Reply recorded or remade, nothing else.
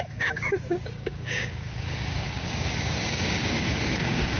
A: remade